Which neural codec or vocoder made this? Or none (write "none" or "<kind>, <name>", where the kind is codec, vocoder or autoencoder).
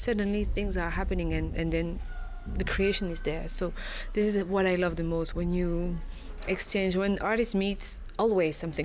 none